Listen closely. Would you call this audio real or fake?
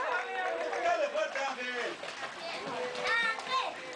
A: real